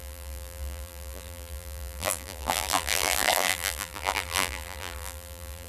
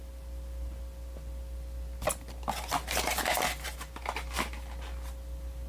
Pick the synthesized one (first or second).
first